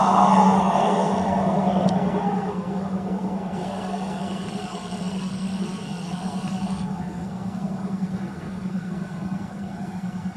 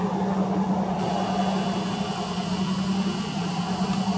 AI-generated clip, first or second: first